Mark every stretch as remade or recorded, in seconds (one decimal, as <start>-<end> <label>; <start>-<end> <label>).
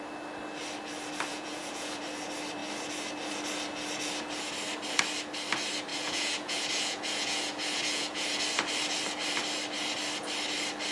0.0-1.3 recorded; 1.3-2.0 remade; 2.0-5.9 recorded; 5.9-8.4 remade; 8.4-10.9 recorded